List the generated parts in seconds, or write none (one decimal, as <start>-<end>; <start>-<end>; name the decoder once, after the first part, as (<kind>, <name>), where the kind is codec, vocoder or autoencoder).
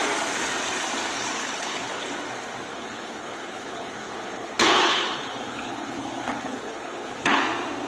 1.4-2.0 (codec, HILCodec); 2.7-7.4